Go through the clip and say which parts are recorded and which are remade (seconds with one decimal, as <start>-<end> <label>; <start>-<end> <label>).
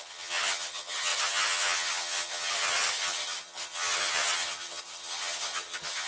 0.0-6.1 remade